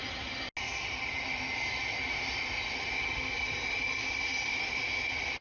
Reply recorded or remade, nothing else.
recorded